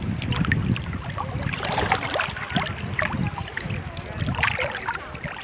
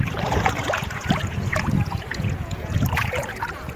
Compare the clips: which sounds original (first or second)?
first